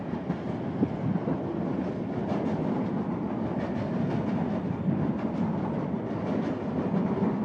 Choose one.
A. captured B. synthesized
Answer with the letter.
A